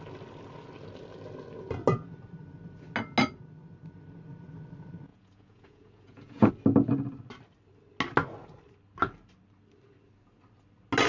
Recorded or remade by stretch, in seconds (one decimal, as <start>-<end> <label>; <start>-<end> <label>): 0.0-5.1 recorded; 5.1-6.5 remade; 6.5-11.1 recorded